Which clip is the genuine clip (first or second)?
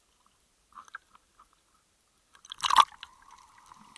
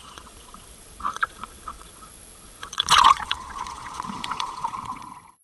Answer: first